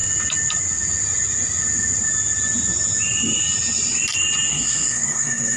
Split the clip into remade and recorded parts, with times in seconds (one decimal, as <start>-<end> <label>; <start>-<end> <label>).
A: 0.0-4.5 recorded; 4.5-5.6 remade